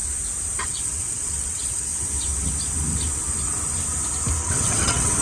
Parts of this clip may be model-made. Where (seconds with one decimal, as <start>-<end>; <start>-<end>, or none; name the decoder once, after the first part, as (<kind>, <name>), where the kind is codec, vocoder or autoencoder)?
0.6-1.9 (vocoder, WaveNeXt); 4.4-5.2